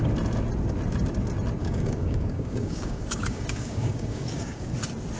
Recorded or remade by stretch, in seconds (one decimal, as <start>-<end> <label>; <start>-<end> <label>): 0.0-1.6 recorded; 1.6-4.7 remade; 4.7-5.2 recorded